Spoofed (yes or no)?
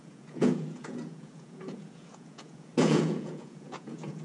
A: yes